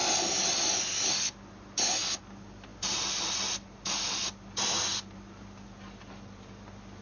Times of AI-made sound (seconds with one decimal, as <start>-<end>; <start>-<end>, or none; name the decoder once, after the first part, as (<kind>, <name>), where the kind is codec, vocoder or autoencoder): none